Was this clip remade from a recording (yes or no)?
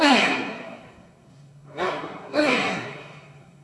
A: yes